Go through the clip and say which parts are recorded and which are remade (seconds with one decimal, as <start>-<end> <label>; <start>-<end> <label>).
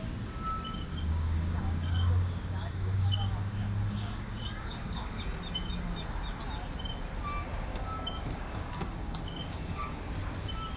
0.0-0.9 recorded; 0.9-5.2 remade; 5.2-7.7 recorded; 7.7-10.0 remade; 10.0-10.8 recorded